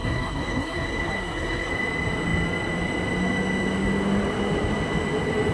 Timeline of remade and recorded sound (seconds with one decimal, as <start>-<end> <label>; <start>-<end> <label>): 0.0-1.7 remade; 1.7-5.5 recorded